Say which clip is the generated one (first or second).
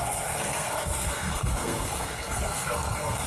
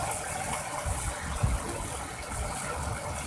first